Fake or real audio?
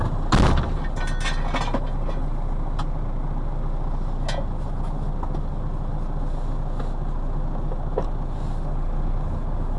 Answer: real